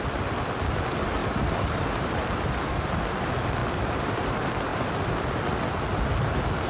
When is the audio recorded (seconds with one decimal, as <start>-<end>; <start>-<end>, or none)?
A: 0.0-1.2; 2.6-6.7